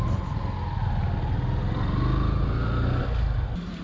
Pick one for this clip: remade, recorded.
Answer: recorded